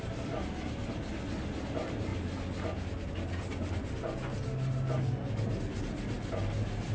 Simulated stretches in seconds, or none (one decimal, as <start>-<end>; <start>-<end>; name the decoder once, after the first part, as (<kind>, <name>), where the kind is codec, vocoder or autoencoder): none